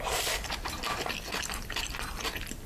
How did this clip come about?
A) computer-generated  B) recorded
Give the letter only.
A